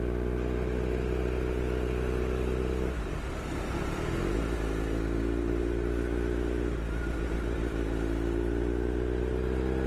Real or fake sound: real